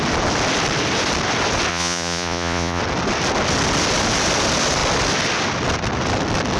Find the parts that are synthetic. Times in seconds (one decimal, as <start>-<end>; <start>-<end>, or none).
1.7-2.8